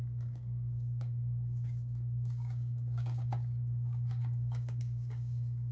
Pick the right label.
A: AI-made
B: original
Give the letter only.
A